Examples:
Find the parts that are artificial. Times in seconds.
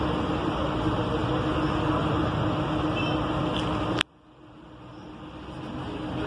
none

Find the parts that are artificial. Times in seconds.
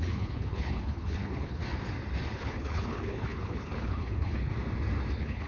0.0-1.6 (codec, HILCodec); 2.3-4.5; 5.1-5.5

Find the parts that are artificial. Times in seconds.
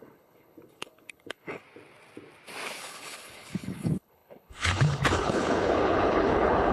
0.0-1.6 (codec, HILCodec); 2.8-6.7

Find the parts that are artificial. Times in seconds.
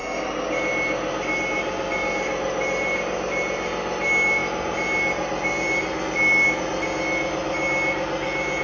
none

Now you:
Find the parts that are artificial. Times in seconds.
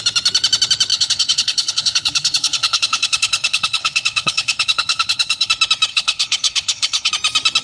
0.9-5.5 (codec, HILCodec); 5.9-7.1